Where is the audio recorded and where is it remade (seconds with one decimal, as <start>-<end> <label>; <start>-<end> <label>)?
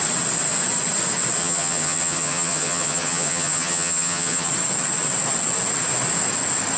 0.0-1.4 recorded; 1.4-4.5 remade; 4.5-6.8 recorded